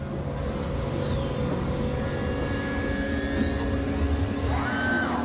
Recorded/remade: recorded